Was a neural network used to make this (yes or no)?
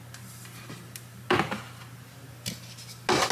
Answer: no